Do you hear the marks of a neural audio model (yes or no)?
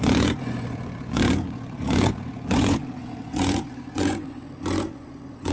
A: yes